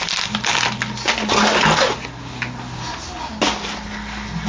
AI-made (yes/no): no